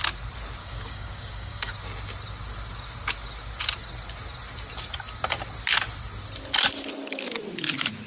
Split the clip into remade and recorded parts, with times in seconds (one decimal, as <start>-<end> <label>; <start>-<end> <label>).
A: 0.0-0.6 recorded; 0.6-1.7 remade; 1.7-8.1 recorded

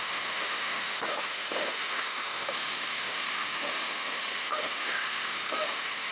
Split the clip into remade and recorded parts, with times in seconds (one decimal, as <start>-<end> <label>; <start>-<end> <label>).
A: 0.0-6.1 remade

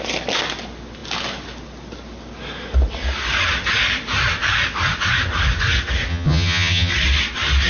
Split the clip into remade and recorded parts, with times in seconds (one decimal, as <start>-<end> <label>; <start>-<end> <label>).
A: 0.0-6.1 recorded; 6.1-6.9 remade; 6.9-7.7 recorded

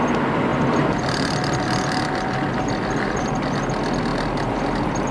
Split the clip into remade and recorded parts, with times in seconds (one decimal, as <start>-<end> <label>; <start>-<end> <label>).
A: 0.0-0.5 recorded; 0.5-3.6 remade; 3.6-4.1 recorded; 4.1-5.1 remade

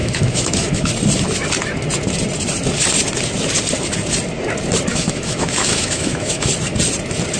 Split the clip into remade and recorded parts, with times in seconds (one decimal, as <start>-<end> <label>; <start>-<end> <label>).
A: 0.0-0.9 remade; 0.9-4.9 recorded; 4.9-6.5 remade; 6.5-7.4 recorded